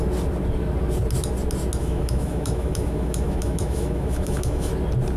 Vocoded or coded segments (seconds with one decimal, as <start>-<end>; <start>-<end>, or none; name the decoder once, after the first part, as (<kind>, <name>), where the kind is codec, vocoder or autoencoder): 1.8-4.7 (autoencoder, DAC-VAE)